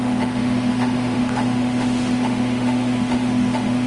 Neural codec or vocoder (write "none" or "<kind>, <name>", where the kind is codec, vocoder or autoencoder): autoencoder, DAC-VAE